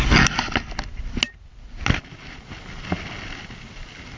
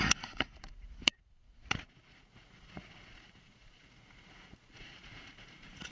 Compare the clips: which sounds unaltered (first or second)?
first